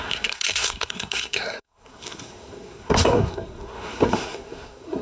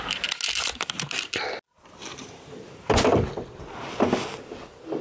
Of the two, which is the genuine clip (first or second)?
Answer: second